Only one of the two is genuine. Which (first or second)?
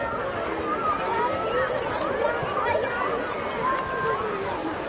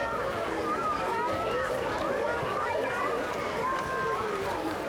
first